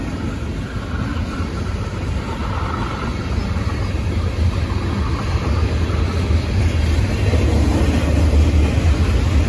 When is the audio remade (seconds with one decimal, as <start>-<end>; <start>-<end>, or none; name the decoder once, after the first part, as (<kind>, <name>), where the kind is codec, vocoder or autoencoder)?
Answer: 1.1-2.2 (vocoder, BigVGAN v2)